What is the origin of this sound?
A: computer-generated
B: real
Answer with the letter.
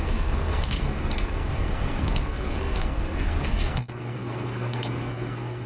A